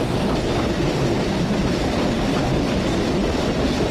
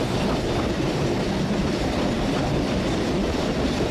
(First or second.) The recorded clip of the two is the first